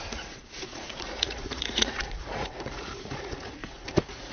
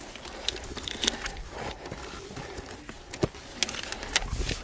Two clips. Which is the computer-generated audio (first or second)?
first